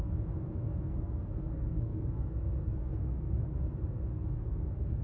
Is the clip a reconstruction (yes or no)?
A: yes